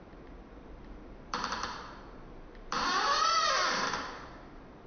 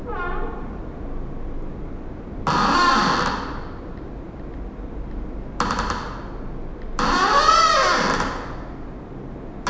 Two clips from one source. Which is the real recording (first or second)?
second